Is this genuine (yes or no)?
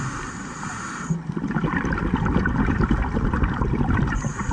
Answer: yes